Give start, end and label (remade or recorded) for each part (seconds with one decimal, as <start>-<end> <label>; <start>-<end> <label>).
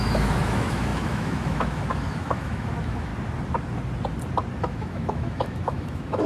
0.0-3.1 remade; 3.1-4.6 recorded; 4.6-6.3 remade